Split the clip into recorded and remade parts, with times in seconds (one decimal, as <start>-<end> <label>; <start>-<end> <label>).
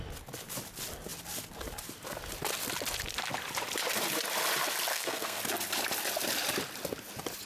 0.0-4.9 recorded; 4.9-5.4 remade; 5.4-7.5 recorded